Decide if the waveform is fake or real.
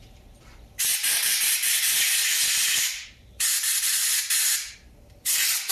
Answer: fake